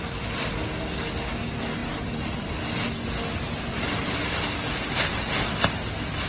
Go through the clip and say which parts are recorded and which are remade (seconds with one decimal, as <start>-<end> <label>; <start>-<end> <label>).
0.0-6.3 recorded